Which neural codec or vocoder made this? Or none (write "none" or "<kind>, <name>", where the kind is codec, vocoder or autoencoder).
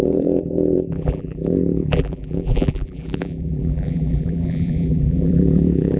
vocoder, BigVGAN v2